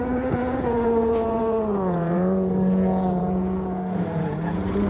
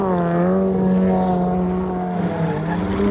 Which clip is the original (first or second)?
second